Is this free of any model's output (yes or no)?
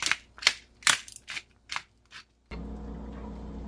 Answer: yes